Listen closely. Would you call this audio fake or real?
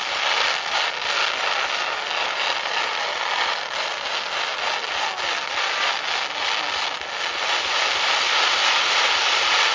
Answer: real